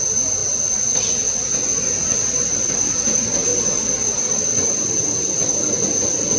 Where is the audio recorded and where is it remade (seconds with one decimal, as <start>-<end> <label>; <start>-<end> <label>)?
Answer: 0.0-3.5 recorded; 3.5-4.2 remade; 4.2-6.4 recorded